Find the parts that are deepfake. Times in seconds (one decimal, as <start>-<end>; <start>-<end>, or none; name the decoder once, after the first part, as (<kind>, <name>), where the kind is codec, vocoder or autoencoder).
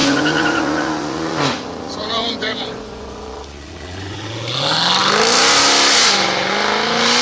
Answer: 0.0-4.3 (vocoder, Vocos)